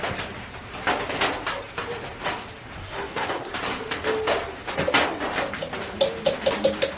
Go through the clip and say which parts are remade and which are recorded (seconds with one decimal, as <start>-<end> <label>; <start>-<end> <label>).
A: 0.0-2.8 recorded; 2.8-3.5 remade; 3.5-7.0 recorded

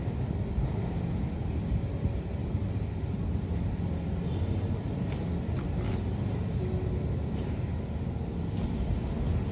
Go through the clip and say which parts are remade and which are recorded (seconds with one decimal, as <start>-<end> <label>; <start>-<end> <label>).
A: 0.0-9.5 recorded